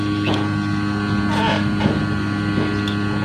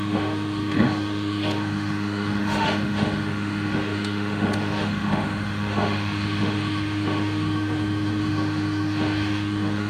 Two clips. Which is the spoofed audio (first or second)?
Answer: second